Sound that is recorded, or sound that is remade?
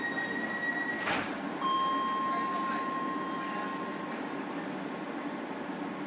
recorded